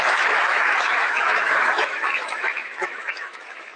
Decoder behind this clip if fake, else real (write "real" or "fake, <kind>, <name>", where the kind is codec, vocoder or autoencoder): fake, autoencoder, DAC-VAE